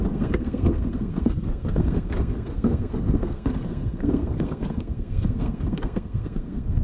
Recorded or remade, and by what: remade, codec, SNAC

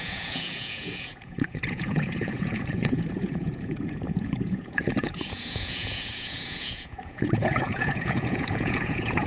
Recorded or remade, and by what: remade, vocoder, Vocos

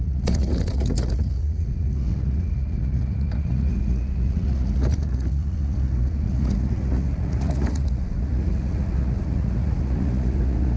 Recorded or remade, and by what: remade, vocoder, Vocos